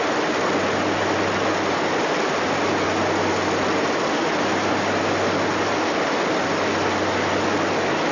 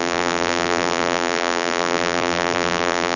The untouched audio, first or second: first